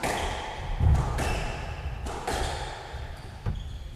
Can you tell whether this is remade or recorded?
remade